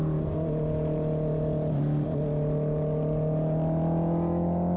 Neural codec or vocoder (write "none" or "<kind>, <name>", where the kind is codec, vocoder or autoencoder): none